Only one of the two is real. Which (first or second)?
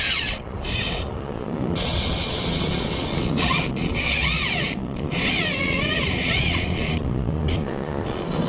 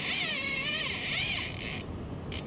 second